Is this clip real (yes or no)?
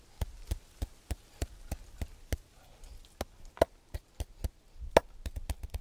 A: yes